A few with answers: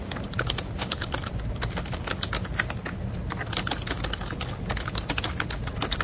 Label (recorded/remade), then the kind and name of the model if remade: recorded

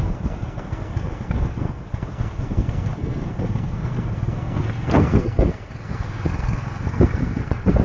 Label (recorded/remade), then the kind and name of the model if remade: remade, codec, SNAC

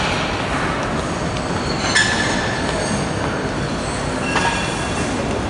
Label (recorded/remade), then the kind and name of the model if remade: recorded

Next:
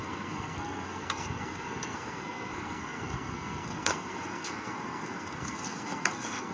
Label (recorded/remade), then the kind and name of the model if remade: remade, codec, SNAC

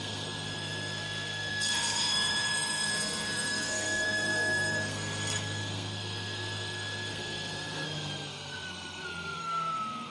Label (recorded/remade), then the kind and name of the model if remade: remade, codec, SNAC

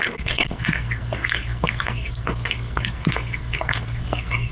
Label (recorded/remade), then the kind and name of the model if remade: remade, codec, SNAC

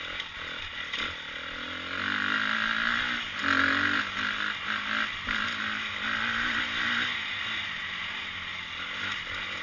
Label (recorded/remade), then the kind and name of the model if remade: recorded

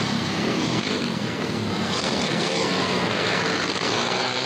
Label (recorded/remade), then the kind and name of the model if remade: remade, codec, SNAC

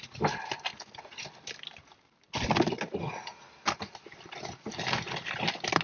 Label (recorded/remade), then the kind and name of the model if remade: recorded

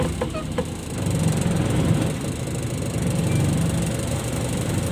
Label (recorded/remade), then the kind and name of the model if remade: recorded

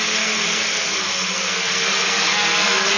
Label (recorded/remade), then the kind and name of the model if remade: remade, codec, SNAC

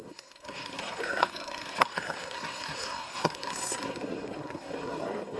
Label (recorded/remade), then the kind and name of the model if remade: remade, codec, SNAC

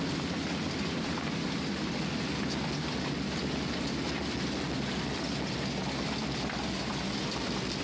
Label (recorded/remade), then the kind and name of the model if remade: recorded